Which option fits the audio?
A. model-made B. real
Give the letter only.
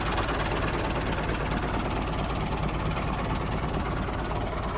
B